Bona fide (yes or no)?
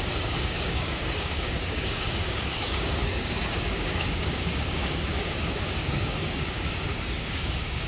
no